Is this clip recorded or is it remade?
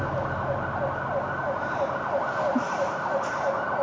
recorded